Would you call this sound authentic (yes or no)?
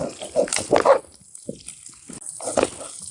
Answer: yes